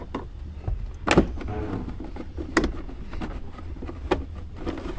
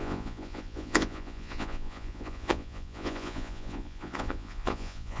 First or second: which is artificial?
second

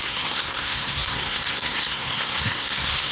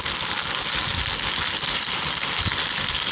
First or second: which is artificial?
first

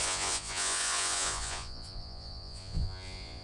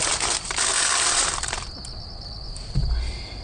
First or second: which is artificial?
first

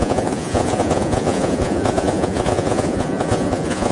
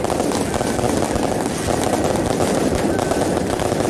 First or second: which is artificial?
first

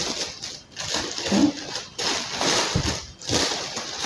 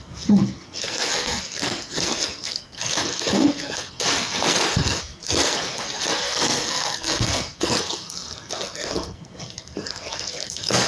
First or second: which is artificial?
second